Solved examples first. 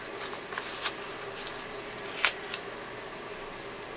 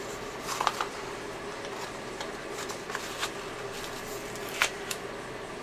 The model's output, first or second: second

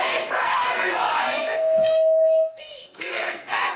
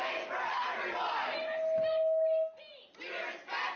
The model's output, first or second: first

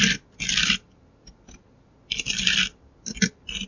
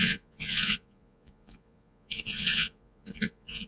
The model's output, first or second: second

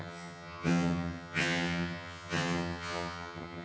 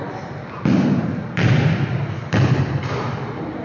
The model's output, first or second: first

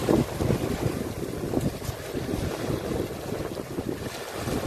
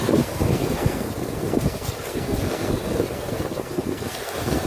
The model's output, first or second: second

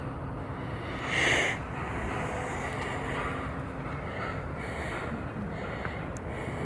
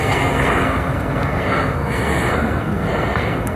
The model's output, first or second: second